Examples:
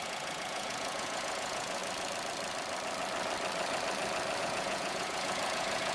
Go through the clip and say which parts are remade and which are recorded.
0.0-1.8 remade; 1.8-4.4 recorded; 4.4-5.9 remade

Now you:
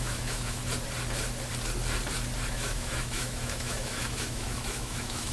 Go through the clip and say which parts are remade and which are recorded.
0.0-0.6 remade; 0.6-2.5 recorded; 2.5-5.3 remade

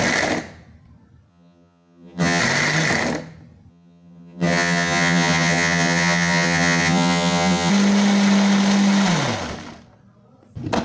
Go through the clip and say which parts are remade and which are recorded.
0.0-1.3 recorded; 1.3-2.4 remade; 2.4-3.7 recorded; 3.7-7.7 remade; 7.7-10.8 recorded

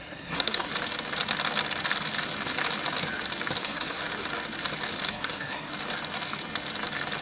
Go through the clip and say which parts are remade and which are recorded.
0.0-0.7 remade; 0.7-3.6 recorded; 3.6-4.0 remade; 4.0-5.1 recorded; 5.1-5.7 remade; 5.7-7.2 recorded

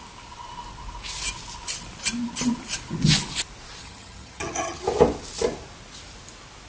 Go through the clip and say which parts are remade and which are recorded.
0.0-3.8 recorded; 3.8-4.8 remade; 4.8-6.7 recorded

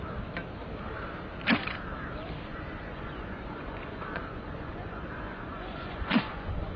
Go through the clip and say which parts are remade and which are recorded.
0.0-2.5 recorded; 2.5-6.8 remade

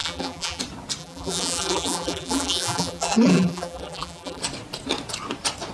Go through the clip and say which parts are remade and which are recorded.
0.0-0.6 remade; 0.6-1.0 recorded; 1.0-4.4 remade; 4.4-5.7 recorded

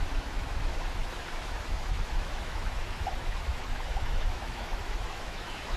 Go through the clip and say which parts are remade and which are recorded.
0.0-5.8 remade